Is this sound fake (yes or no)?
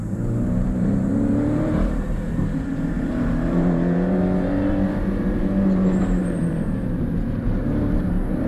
yes